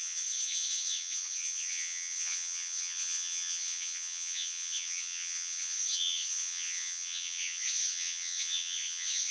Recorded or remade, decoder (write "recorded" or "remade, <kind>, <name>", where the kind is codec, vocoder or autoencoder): remade, vocoder, WaveNeXt